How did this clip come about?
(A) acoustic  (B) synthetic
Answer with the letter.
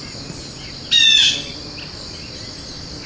A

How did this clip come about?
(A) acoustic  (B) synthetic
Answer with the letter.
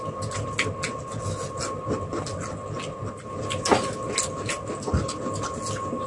A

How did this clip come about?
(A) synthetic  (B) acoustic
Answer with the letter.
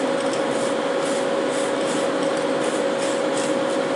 B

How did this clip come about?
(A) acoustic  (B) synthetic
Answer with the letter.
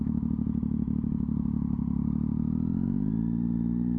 A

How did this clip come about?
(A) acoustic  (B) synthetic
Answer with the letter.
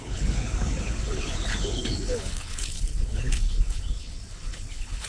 B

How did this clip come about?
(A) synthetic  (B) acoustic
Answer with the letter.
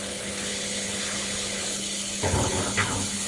A